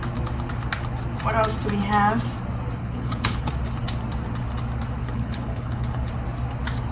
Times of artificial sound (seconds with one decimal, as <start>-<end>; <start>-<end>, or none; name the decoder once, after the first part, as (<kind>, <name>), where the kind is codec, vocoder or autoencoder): 2.8-3.5 (codec, HILCodec); 5.0-6.1